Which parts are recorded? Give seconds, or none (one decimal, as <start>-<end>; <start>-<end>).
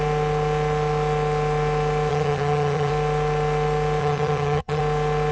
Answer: 0.0-2.1; 2.9-4.0; 4.8-5.3